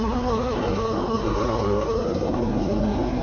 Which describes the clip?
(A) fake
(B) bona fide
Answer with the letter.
A